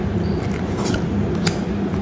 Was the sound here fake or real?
real